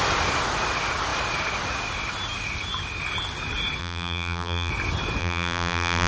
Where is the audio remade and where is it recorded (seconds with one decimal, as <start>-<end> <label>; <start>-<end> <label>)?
0.0-3.8 recorded; 3.8-4.7 remade; 4.7-5.2 recorded; 5.2-6.1 remade